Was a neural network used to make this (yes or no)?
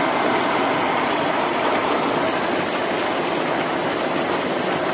no